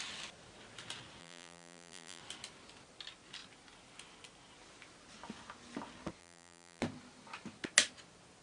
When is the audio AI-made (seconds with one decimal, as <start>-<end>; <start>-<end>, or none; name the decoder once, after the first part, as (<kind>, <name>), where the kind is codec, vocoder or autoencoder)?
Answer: 1.2-2.2 (vocoder, BigVGAN v2); 6.2-6.8